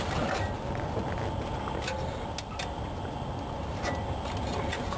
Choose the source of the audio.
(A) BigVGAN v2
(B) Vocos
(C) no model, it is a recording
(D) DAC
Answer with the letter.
C